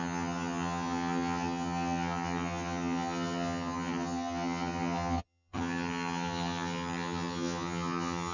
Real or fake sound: fake